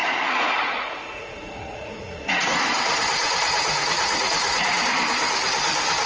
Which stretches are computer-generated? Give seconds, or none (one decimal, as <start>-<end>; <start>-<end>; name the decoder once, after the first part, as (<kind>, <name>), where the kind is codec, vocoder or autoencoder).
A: 0.0-2.6 (vocoder, Vocos); 3.2-4.8